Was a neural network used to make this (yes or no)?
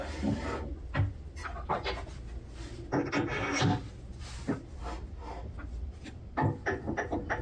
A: no